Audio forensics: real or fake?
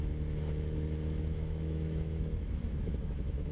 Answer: fake